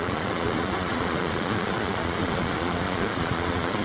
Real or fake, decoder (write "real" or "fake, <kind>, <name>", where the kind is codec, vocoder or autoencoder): fake, vocoder, Vocos